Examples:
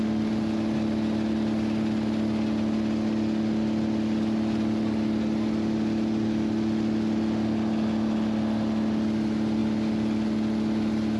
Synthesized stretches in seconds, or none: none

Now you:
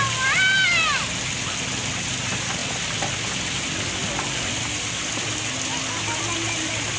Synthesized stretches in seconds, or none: 2.6-5.1 (vocoder, BigVGAN v2)

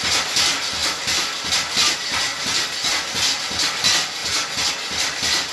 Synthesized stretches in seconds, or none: none